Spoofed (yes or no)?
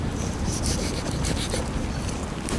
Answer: yes